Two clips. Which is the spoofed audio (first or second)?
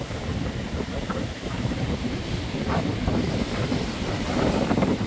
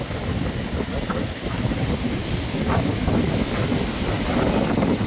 first